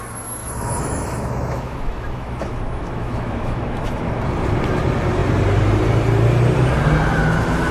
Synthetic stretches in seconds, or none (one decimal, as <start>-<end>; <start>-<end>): 0.4-4.1